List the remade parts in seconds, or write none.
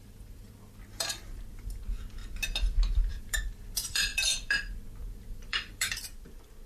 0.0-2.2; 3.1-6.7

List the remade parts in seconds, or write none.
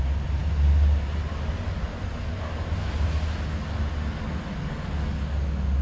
none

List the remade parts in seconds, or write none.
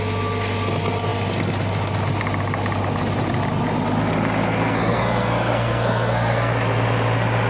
4.5-6.5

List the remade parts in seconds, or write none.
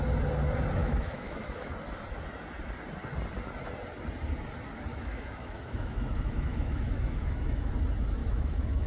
0.8-1.7; 4.9-7.7; 8.2-8.9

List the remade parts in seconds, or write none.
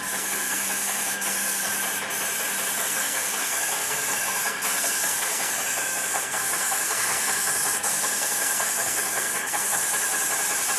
0.0-1.7; 2.8-9.8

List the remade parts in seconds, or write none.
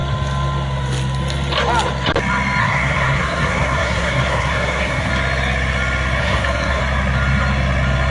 2.6-5.1; 6.2-6.8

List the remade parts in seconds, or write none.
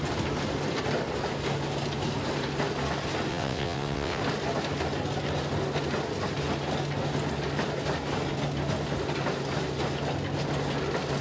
3.3-4.2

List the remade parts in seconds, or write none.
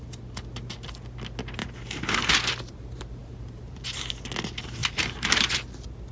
1.6-2.4; 3.2-4.0; 4.8-5.5